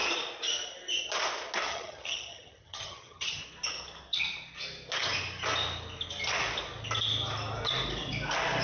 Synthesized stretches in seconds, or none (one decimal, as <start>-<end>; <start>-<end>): 1.7-3.4